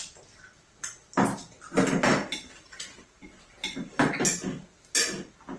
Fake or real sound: real